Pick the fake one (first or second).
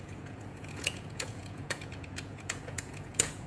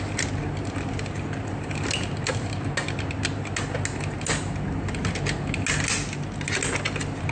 first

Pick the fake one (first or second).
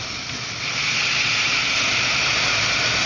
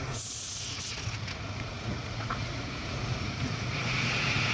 second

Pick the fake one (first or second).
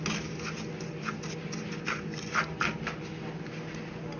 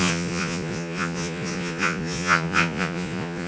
second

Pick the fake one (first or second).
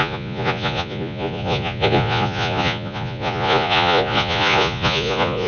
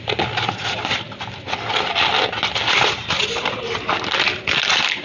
first